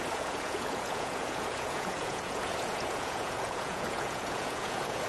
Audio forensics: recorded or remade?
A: remade